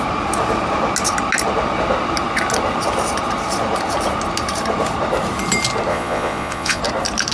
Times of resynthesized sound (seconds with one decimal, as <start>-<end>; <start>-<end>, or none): 5.9-6.8